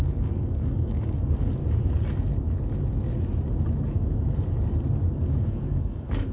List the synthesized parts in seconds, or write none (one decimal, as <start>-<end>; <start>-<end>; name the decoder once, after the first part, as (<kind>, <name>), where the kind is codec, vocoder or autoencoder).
0.0-1.6 (codec, DAC); 5.4-6.3

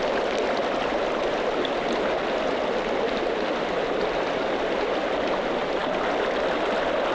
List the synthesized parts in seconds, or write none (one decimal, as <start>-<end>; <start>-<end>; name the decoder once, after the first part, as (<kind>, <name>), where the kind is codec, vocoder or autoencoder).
none

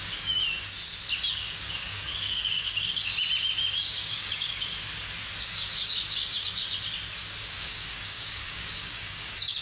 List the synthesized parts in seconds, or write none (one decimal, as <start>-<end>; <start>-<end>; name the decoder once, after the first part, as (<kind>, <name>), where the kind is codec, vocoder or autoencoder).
0.0-0.4 (codec, DAC); 1.3-3.1; 3.8-4.7; 5.4-6.6; 7.6-9.6

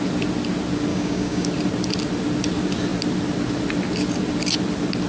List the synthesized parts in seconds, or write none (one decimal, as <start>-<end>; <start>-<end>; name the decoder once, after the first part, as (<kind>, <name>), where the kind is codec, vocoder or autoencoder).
0.9-1.5 (codec, DAC)

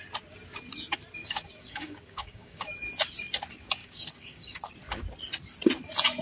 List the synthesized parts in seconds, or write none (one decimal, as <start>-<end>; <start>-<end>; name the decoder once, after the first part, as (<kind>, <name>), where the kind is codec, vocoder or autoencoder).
1.2-2.7 (codec, DAC); 3.8-4.7